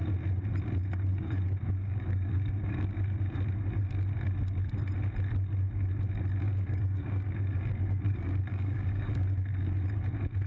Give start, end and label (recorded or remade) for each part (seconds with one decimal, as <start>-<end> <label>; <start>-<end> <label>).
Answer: 0.0-1.1 recorded; 1.1-3.0 remade; 3.0-6.5 recorded; 6.5-9.8 remade; 9.8-10.5 recorded